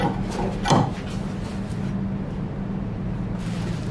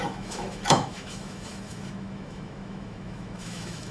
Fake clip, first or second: second